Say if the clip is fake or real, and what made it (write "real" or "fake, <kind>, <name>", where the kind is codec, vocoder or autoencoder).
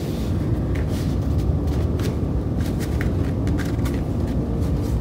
real